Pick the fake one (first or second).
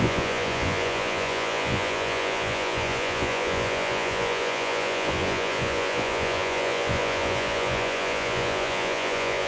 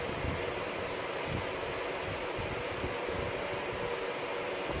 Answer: first